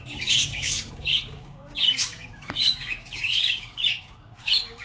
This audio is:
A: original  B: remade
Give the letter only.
B